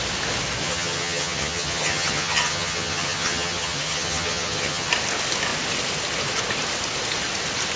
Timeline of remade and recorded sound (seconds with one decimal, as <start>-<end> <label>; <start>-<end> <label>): 0.0-0.6 recorded; 0.6-4.9 remade; 4.9-7.8 recorded